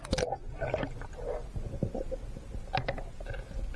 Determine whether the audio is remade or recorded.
recorded